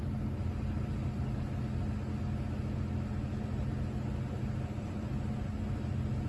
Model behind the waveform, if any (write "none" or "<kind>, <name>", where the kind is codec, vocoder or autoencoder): none